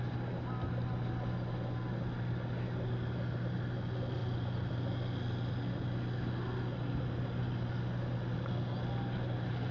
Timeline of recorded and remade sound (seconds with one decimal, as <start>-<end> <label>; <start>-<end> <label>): 0.0-9.7 recorded